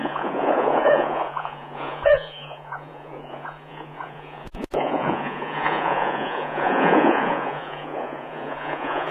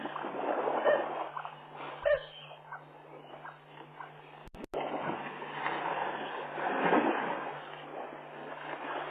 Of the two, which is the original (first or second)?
second